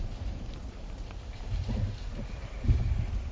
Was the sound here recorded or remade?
recorded